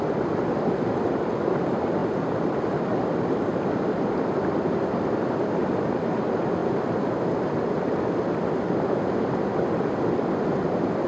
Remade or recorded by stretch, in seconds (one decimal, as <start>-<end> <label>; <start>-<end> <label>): 0.0-2.0 remade; 2.0-3.9 recorded; 3.9-11.1 remade

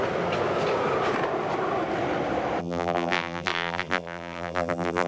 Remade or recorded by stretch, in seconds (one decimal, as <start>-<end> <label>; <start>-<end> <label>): 0.0-2.6 recorded; 2.6-5.1 remade

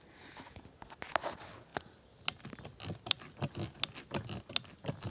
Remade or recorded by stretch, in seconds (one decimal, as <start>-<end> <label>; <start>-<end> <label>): 0.0-5.1 recorded

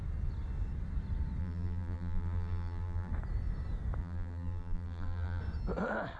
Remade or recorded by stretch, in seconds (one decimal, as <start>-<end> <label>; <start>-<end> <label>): 0.0-1.4 recorded; 1.4-3.1 remade; 3.1-4.0 recorded; 4.0-5.4 remade; 5.4-6.2 recorded

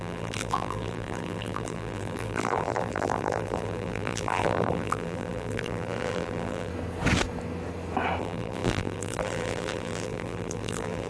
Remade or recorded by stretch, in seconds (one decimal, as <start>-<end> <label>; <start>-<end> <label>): 0.0-6.7 remade; 6.7-8.2 recorded; 8.2-11.1 remade